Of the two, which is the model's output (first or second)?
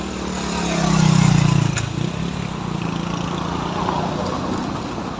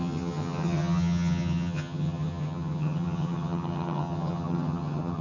second